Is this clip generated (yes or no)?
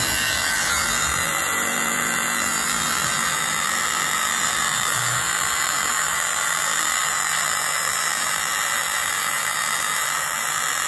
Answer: yes